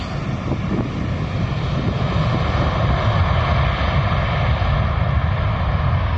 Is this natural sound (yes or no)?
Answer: yes